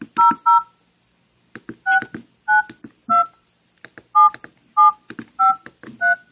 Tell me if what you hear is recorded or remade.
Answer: recorded